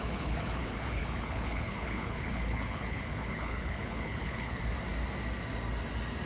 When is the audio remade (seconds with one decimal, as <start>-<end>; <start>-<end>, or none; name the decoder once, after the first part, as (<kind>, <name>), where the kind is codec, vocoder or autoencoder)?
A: 0.0-4.6 (codec, HILCodec)